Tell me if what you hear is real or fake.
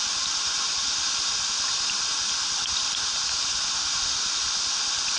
real